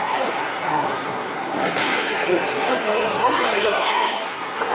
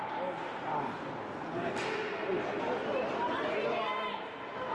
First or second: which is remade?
first